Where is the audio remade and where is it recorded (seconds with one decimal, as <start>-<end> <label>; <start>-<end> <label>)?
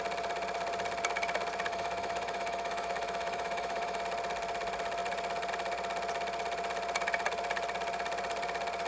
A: 0.0-1.7 recorded; 1.7-4.0 remade; 4.0-8.9 recorded